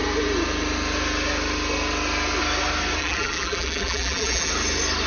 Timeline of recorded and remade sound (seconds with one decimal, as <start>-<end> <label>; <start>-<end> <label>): 0.0-3.0 recorded; 3.0-4.5 remade; 4.5-5.1 recorded